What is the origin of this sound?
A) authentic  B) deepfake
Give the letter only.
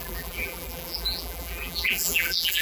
B